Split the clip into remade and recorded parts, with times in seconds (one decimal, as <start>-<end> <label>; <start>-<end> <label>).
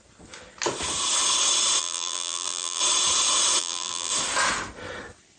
0.0-1.8 recorded; 1.8-2.8 remade; 2.8-3.6 recorded; 3.6-4.1 remade; 4.1-5.4 recorded